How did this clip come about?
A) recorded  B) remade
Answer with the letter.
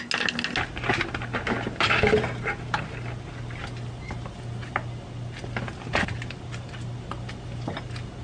A